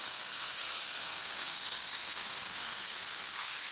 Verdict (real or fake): fake